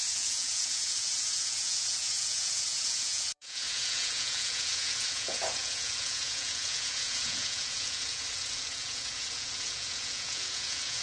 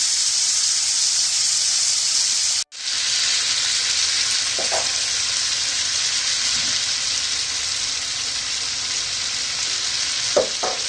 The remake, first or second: first